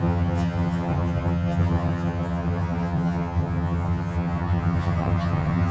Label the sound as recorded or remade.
remade